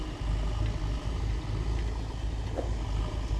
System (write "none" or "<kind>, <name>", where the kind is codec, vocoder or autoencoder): none